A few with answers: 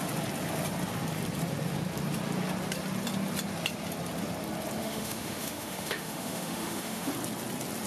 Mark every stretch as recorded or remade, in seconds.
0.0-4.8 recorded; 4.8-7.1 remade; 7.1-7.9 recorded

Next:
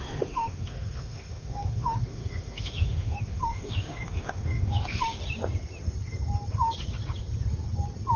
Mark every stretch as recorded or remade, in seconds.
0.0-5.2 remade; 5.2-8.2 recorded

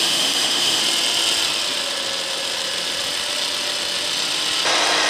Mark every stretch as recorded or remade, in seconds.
0.0-0.8 remade; 0.8-5.1 recorded

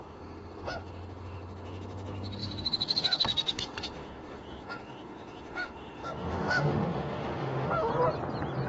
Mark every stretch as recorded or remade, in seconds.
0.0-7.9 remade; 7.9-8.7 recorded

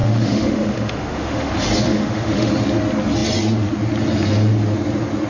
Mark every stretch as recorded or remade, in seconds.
0.0-1.5 remade; 1.5-1.9 recorded; 1.9-2.5 remade; 2.5-5.3 recorded

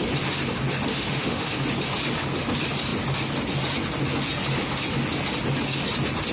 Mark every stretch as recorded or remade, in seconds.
0.0-0.9 recorded; 0.9-1.6 remade; 1.6-6.3 recorded

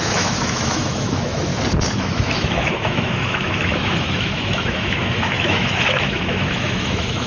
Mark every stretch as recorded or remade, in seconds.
0.0-1.5 remade; 1.5-2.0 recorded; 2.0-7.3 remade